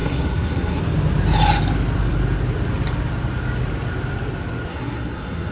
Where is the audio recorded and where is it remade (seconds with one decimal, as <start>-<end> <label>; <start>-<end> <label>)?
0.0-0.8 remade; 0.8-4.7 recorded; 4.7-5.5 remade